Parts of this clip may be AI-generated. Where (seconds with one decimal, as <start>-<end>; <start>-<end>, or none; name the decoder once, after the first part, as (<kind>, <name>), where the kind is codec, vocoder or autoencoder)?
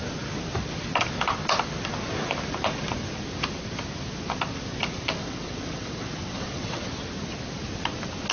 5.2-6.8 (vocoder, WaveNeXt)